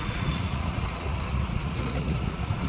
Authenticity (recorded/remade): remade